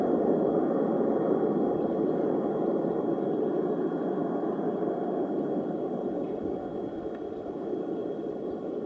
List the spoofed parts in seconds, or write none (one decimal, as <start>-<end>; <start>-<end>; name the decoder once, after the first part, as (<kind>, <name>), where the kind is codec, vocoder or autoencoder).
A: 8.0-8.9 (vocoder, BigVGAN v2)